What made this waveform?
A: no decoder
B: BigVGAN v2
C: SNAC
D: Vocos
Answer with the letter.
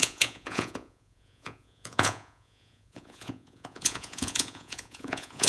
D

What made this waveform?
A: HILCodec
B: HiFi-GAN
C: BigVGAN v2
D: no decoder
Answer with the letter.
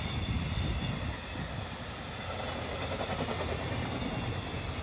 D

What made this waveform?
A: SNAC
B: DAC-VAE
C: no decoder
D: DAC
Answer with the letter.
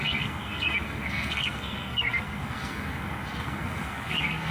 A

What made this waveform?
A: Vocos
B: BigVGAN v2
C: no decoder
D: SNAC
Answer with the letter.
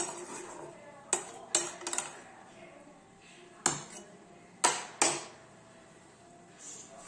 C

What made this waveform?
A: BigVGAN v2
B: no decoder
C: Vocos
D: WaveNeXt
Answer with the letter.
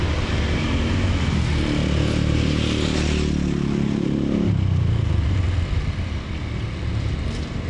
B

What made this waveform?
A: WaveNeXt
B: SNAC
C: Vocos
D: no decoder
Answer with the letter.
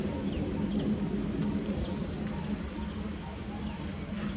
D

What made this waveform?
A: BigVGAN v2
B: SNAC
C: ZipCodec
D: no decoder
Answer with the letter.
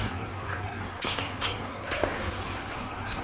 B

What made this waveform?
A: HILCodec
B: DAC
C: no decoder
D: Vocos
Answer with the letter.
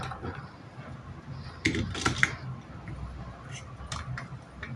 C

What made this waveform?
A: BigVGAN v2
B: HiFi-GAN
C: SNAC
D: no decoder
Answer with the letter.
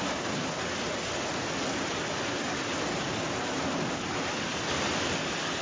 D